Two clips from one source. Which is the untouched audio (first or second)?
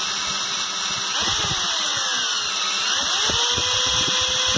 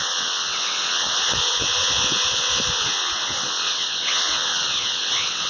first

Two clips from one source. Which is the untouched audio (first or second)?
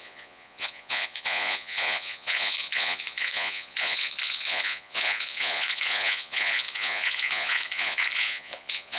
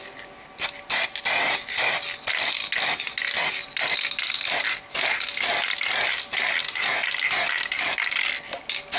second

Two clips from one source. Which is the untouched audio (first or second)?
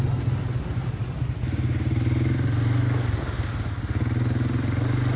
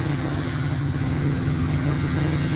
first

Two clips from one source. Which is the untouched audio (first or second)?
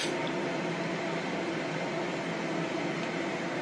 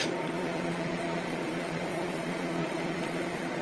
first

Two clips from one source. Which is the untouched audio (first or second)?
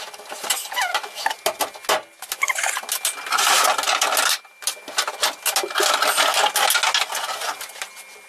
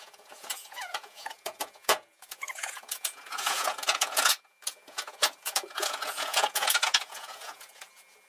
first